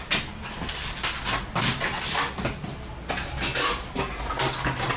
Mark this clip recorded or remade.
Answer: recorded